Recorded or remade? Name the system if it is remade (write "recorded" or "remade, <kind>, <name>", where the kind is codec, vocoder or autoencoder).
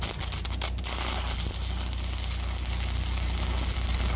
recorded